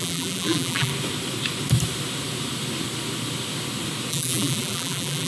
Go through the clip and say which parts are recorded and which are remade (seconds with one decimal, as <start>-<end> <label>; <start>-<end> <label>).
0.0-0.9 remade; 0.9-4.1 recorded; 4.1-5.3 remade